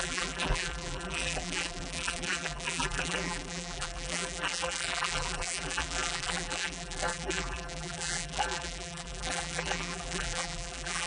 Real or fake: fake